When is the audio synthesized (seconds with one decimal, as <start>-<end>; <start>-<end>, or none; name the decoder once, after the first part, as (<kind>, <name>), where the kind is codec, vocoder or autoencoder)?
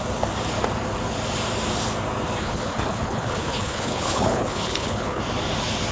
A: 2.4-5.2 (codec, HILCodec)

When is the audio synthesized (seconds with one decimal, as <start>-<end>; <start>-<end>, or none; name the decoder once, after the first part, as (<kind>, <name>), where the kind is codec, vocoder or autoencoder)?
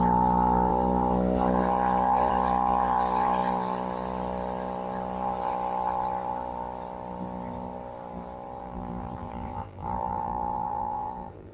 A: 8.6-11.5 (vocoder, BigVGAN v2)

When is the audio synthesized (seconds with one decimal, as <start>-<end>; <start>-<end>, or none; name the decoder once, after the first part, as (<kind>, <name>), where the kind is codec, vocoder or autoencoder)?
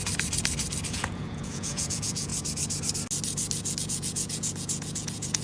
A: 0.9-2.3 (vocoder, Vocos); 3.8-5.4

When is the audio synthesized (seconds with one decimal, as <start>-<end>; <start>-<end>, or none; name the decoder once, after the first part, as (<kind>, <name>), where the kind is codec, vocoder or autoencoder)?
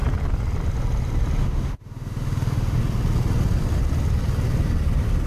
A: 1.4-2.8 (autoencoder, DAC-VAE)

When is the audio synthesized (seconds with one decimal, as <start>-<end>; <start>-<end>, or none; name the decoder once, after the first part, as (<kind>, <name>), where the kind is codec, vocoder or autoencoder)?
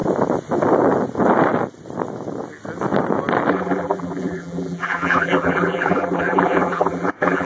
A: 3.5-7.4 (vocoder, BigVGAN v2)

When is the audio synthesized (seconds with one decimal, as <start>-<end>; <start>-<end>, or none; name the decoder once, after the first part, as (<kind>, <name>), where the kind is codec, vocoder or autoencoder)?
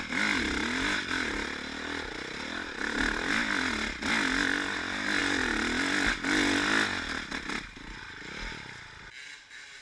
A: none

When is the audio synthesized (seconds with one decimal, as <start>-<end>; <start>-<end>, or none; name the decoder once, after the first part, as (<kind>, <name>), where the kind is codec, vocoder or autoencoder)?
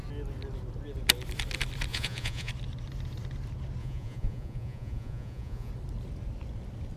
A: 1.9-2.5 (vocoder, Vocos); 3.8-5.7